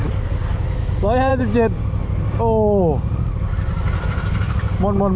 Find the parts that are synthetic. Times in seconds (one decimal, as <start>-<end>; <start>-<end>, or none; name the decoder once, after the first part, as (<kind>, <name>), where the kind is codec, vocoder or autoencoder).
none